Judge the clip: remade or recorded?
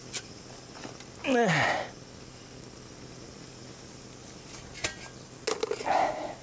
recorded